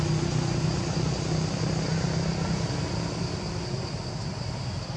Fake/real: real